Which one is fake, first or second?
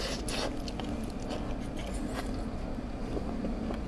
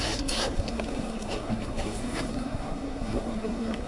second